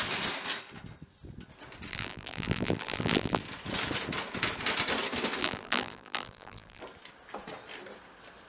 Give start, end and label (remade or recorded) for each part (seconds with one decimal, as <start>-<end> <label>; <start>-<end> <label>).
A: 0.0-1.9 recorded; 1.9-3.4 remade; 3.4-5.4 recorded; 5.4-6.8 remade; 6.8-8.5 recorded